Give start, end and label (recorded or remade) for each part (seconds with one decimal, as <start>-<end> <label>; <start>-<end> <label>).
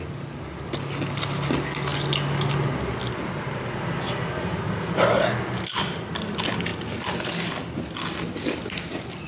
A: 0.0-9.3 recorded